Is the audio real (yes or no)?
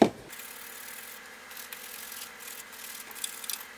yes